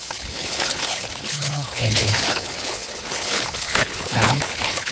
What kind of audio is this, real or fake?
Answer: fake